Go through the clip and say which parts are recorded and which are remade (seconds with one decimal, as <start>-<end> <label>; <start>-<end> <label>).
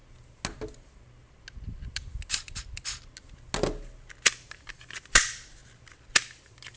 0.0-6.8 recorded